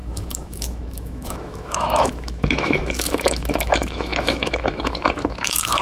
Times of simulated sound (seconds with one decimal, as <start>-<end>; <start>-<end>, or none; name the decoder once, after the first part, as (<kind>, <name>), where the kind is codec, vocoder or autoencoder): 0.0-5.8 (autoencoder, DAC-VAE)